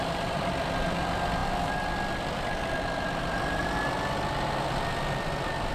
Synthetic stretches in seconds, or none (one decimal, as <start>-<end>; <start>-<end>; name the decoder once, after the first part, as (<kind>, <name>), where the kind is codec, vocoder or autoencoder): 0.0-5.7 (vocoder, BigVGAN v2)